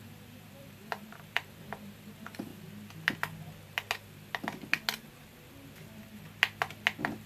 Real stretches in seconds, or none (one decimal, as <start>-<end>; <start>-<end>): 2.5-7.3